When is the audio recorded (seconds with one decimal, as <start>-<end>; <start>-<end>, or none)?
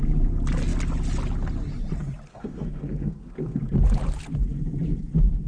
0.0-2.3; 3.6-5.5